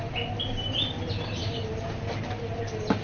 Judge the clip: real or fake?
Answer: real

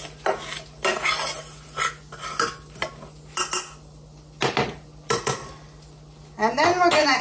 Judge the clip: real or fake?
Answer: real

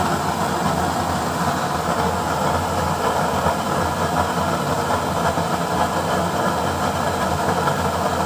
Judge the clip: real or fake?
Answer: real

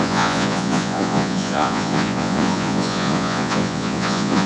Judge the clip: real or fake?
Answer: fake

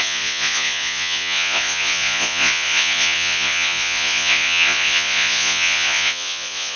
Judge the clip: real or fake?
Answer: fake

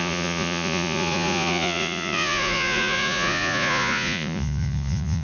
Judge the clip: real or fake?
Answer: fake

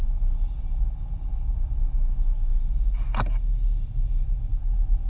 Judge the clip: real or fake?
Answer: real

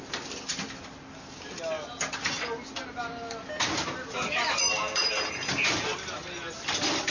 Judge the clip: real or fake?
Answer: real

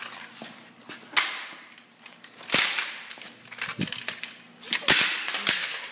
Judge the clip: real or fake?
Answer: real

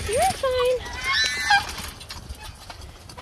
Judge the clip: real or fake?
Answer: real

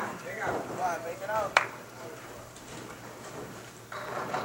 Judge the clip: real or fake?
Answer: fake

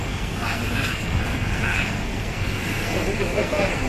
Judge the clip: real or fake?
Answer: fake